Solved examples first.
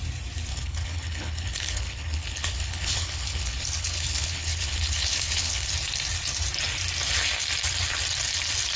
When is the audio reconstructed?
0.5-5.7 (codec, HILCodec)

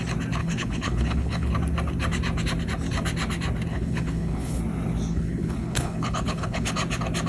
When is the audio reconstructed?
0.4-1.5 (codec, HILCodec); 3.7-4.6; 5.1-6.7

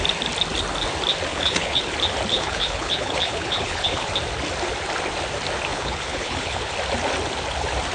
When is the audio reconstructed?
1.3-1.9 (codec, HILCodec); 2.3-4.1; 5.7-6.7

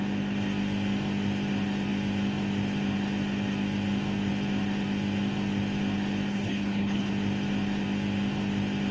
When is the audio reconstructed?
6.3-7.1 (codec, HILCodec)

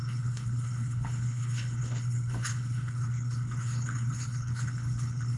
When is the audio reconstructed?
0.0-5.4 (codec, HILCodec)